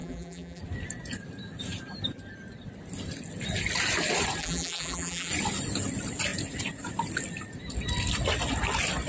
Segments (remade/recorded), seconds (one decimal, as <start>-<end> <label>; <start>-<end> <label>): 0.0-0.6 remade; 0.6-4.4 recorded; 4.4-5.3 remade; 5.3-9.1 recorded